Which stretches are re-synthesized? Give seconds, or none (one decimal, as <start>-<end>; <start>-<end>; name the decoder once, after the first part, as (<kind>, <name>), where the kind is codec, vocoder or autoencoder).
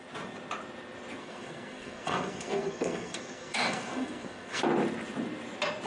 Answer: 1.2-4.6 (codec, SNAC)